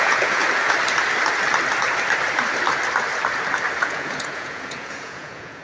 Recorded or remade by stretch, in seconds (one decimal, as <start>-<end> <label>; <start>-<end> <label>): 0.0-0.4 remade; 0.4-3.8 recorded; 3.8-5.6 remade

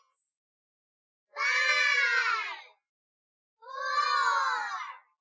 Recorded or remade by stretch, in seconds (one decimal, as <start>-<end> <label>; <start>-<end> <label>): 0.0-5.2 recorded